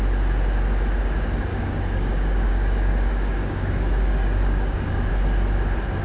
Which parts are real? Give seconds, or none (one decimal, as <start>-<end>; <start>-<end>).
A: 0.0-1.5; 5.1-6.0